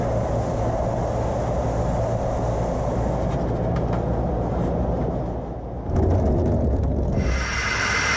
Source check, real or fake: real